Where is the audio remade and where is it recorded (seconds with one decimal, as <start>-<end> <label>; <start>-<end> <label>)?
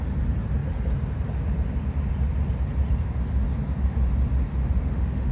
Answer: 0.0-4.6 recorded; 4.6-5.3 remade